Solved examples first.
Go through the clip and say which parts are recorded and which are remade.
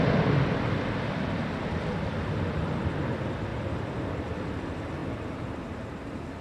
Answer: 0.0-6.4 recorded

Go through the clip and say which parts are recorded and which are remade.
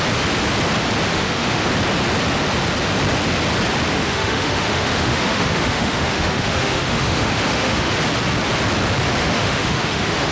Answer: 0.0-1.1 recorded; 1.1-1.7 remade; 1.7-3.9 recorded; 3.9-7.9 remade; 7.9-9.2 recorded; 9.2-10.3 remade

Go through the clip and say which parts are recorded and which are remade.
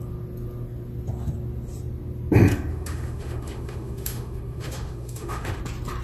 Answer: 0.0-2.7 recorded; 2.7-5.6 remade; 5.6-6.0 recorded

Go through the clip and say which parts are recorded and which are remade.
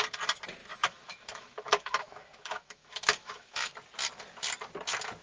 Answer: 0.0-0.6 recorded; 0.6-3.7 remade; 3.7-5.2 recorded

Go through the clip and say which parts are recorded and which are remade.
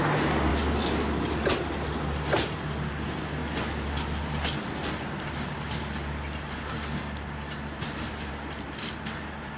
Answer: 0.0-9.6 recorded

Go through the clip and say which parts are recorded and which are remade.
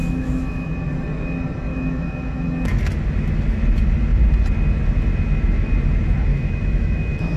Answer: 0.0-0.7 remade; 0.7-1.7 recorded; 1.7-2.8 remade; 2.8-6.3 recorded; 6.3-7.4 remade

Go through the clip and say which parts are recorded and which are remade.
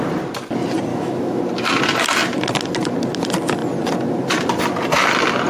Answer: 0.0-0.9 recorded; 0.9-1.4 remade; 1.4-5.5 recorded